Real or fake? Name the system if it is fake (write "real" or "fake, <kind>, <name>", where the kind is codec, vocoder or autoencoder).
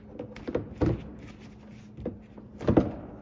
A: real